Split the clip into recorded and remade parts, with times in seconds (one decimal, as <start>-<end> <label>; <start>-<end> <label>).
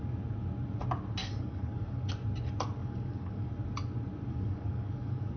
0.0-1.2 recorded; 1.2-2.1 remade; 2.1-2.8 recorded; 2.8-3.5 remade; 3.5-4.3 recorded; 4.3-5.4 remade